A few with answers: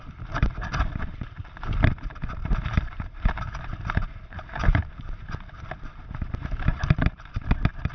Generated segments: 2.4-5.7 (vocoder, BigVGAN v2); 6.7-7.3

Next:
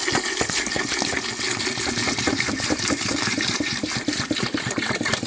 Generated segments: 2.0-5.3 (vocoder, BigVGAN v2)

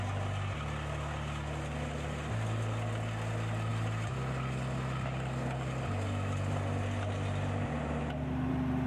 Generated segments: none